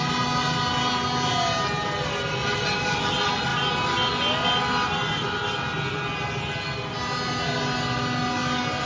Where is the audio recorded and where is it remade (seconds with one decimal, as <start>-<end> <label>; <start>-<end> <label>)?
0.0-8.9 recorded